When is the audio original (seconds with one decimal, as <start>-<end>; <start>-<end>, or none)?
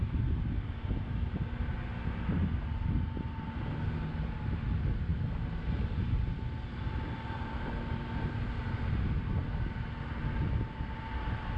0.0-11.6